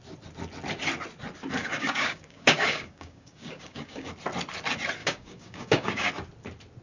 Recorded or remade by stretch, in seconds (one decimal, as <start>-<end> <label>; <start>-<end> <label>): 0.0-1.6 recorded; 1.6-4.1 remade; 4.1-5.0 recorded; 5.0-6.1 remade; 6.1-6.8 recorded